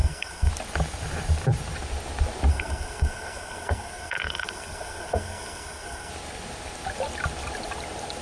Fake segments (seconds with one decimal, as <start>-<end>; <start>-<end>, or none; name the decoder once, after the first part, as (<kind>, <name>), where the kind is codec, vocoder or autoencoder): 0.0-0.5 (codec, SNAC); 2.5-6.1